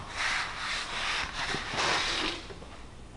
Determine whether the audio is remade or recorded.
recorded